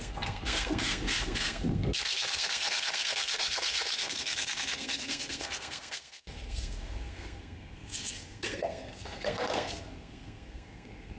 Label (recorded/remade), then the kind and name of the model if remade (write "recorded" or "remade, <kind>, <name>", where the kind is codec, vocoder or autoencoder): remade, codec, SNAC